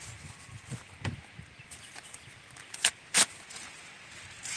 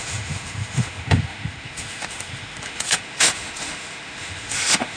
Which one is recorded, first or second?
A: first